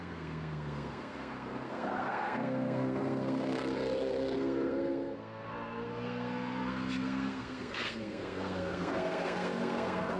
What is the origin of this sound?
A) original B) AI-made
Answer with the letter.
B